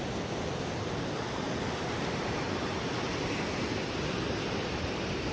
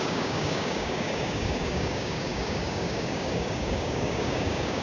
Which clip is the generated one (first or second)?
second